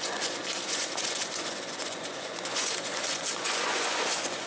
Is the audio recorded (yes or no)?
no